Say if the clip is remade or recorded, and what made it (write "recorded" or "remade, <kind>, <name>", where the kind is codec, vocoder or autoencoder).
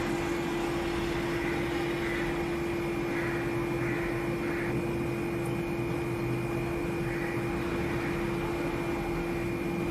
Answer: recorded